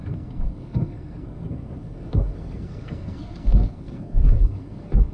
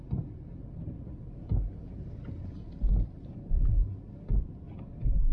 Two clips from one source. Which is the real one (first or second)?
second